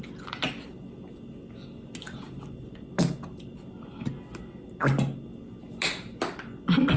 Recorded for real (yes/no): yes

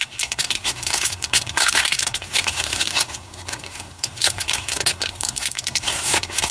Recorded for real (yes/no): no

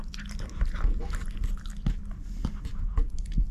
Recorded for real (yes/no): yes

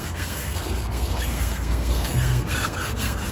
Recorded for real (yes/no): no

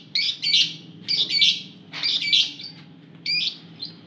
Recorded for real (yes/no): yes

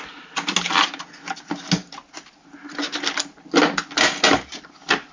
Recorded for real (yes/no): yes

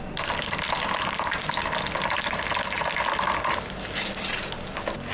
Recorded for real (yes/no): yes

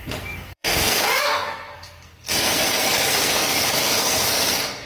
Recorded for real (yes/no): no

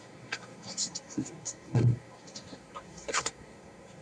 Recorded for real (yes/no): no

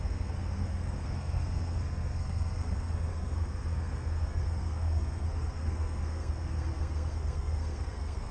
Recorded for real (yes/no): no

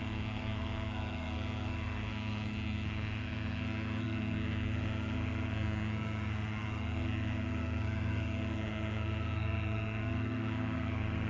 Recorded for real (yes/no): no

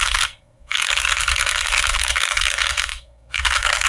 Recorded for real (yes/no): no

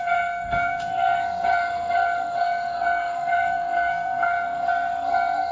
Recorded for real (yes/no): no